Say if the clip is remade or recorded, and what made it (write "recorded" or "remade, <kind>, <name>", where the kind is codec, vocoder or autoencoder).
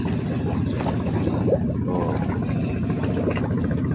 recorded